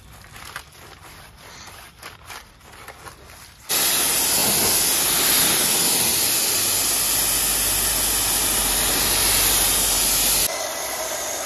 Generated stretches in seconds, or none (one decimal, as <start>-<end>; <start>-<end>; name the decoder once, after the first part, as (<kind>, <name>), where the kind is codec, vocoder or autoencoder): none